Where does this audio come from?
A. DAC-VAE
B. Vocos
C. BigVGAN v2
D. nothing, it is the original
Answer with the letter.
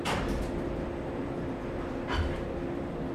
D